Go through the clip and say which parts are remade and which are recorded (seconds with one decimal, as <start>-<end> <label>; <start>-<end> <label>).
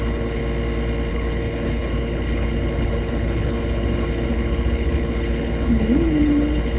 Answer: 0.0-0.4 remade; 0.4-1.1 recorded; 1.1-6.8 remade